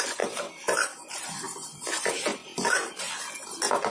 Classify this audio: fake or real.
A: real